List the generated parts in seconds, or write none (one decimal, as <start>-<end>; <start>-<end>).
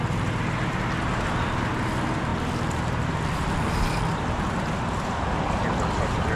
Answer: none